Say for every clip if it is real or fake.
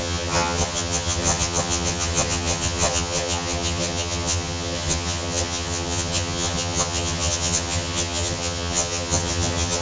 fake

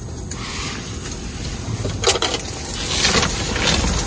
real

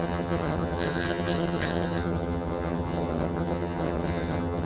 fake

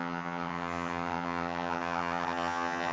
fake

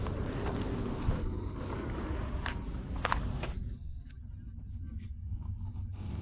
real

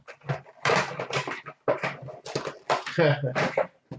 real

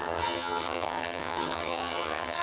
fake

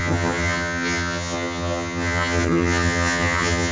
fake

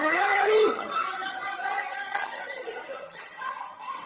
fake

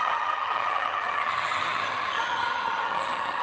fake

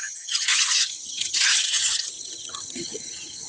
fake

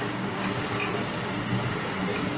real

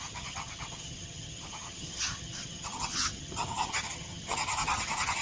fake